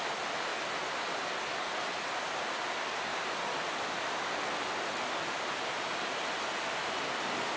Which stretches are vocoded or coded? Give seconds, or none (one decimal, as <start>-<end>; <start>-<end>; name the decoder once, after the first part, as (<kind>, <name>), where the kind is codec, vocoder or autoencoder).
3.1-5.7 (vocoder, BigVGAN v2)